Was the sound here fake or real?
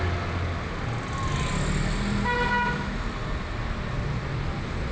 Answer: real